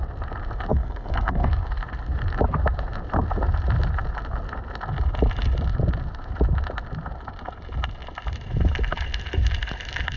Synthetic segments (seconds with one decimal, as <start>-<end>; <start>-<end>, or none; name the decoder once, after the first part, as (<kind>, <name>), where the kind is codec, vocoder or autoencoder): 0.7-1.5 (codec, SNAC)